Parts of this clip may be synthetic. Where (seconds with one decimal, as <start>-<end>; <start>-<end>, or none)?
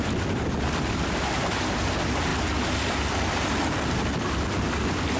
none